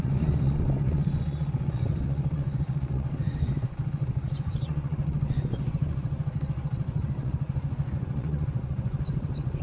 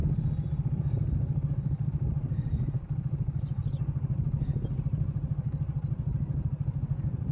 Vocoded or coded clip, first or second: first